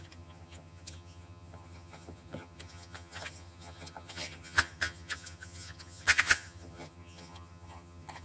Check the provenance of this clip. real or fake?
fake